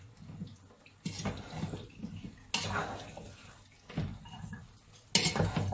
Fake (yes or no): no